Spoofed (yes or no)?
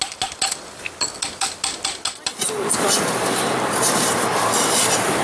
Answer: no